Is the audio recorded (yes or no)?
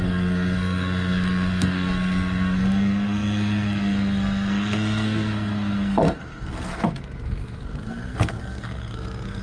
no